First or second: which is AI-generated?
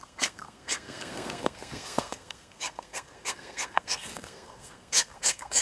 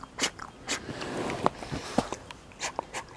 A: first